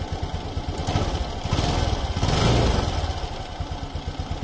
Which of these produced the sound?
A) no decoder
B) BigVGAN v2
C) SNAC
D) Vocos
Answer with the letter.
A